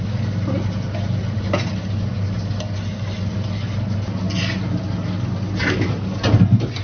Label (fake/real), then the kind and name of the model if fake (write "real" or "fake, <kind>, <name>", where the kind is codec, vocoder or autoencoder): real